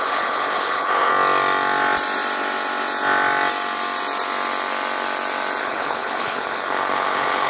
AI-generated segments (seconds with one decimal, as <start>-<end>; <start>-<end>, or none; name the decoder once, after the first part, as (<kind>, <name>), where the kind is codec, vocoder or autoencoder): 0.0-1.1 (codec, HILCodec); 5.6-7.5